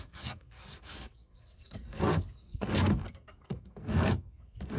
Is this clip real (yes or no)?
no